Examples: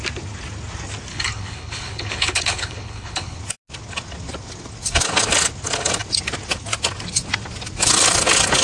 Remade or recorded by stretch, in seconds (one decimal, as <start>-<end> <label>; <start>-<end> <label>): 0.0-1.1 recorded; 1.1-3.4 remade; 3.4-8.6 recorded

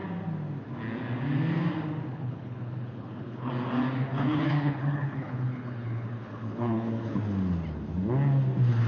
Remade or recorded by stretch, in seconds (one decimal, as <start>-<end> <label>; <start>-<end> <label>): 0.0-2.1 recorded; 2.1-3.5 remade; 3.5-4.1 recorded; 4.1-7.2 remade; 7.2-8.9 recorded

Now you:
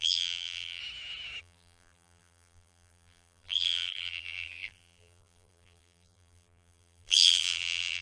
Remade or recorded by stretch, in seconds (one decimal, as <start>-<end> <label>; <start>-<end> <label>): 0.0-0.8 remade; 0.8-1.4 recorded; 1.4-8.0 remade

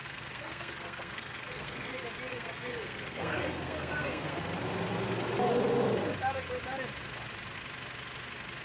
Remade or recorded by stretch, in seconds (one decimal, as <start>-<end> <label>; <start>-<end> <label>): 0.0-1.9 remade; 1.9-2.3 recorded; 2.3-4.4 remade; 4.4-8.6 recorded